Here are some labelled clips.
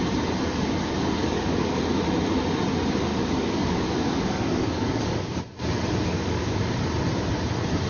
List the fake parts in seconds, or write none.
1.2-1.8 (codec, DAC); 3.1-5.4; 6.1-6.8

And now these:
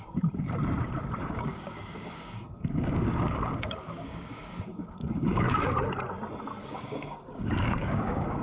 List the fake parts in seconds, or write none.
1.2-5.7 (codec, DAC); 6.6-8.4

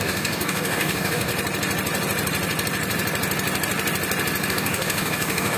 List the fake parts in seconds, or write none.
0.0-1.3 (codec, DAC); 4.5-5.6

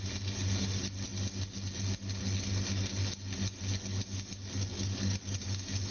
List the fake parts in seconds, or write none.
4.7-5.4 (codec, DAC)

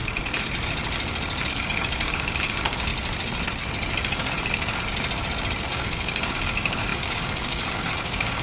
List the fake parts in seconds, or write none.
1.5-2.9 (codec, DAC); 5.7-8.4

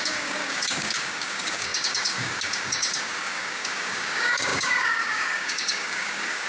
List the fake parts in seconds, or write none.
0.0-6.5 (codec, DAC)

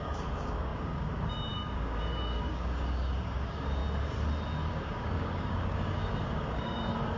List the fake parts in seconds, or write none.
0.0-3.8 (codec, DAC); 4.7-7.2